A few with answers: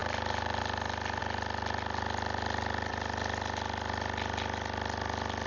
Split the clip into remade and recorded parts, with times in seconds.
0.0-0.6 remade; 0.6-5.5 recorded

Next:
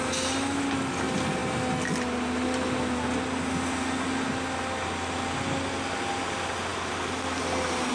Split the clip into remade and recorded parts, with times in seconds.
0.0-7.9 recorded

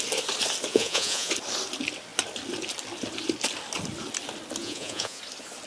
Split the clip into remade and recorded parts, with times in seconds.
0.0-0.7 recorded; 0.7-1.3 remade; 1.3-4.6 recorded; 4.6-5.2 remade; 5.2-5.7 recorded